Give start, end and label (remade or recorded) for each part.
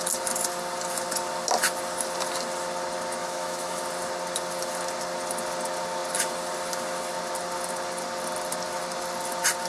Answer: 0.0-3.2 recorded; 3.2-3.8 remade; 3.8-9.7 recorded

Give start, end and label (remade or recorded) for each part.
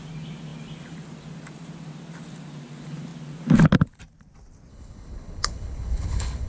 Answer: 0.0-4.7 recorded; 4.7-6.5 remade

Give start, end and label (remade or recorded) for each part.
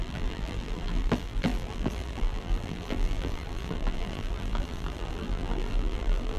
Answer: 0.0-6.4 remade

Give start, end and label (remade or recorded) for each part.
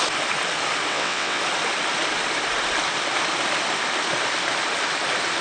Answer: 0.0-0.9 recorded; 0.9-1.4 remade; 1.4-5.4 recorded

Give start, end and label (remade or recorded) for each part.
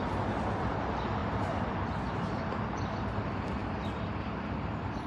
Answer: 0.0-5.1 recorded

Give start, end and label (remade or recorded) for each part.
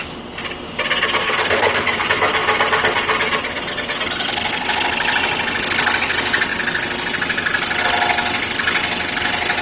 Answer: 0.0-1.2 recorded; 1.2-2.0 remade; 2.0-9.6 recorded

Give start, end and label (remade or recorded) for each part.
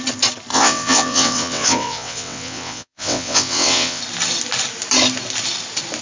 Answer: 0.0-0.5 recorded; 0.5-4.0 remade; 4.0-6.0 recorded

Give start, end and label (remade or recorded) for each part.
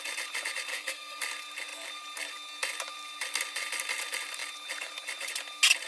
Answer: 0.0-0.7 recorded; 0.7-1.2 remade; 1.2-5.9 recorded